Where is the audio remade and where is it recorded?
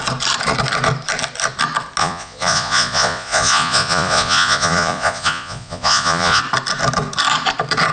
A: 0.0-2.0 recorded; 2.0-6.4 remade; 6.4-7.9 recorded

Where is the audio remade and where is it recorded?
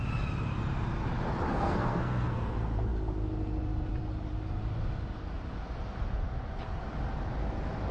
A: 0.0-1.5 recorded; 1.5-2.5 remade; 2.5-7.9 recorded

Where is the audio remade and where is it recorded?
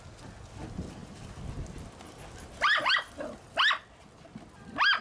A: 0.0-5.0 recorded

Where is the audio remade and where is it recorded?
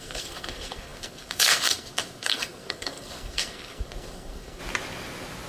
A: 0.0-4.6 remade; 4.6-5.5 recorded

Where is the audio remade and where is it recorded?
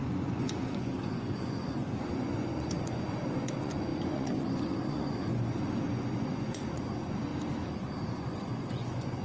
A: 0.0-7.3 remade; 7.3-8.1 recorded; 8.1-9.2 remade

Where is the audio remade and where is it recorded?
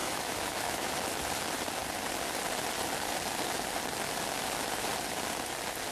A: 0.0-0.9 remade; 0.9-5.9 recorded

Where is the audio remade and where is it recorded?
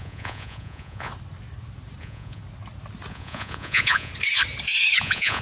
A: 0.0-1.1 remade; 1.1-2.0 recorded; 2.0-2.4 remade; 2.4-3.1 recorded; 3.1-4.1 remade; 4.1-5.0 recorded; 5.0-5.4 remade